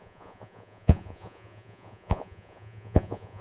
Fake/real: fake